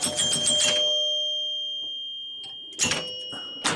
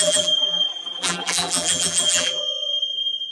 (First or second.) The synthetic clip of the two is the second